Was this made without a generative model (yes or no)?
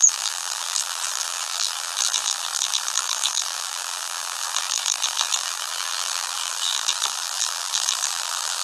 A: no